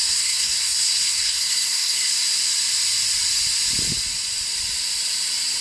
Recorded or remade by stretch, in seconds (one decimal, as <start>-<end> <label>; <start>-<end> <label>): 0.0-2.1 remade; 2.1-5.6 recorded